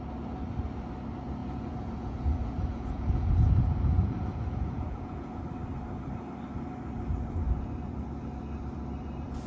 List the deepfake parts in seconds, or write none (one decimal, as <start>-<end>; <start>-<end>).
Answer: 1.4-5.4